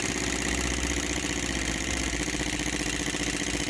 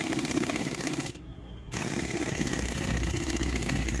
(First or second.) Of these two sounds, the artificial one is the second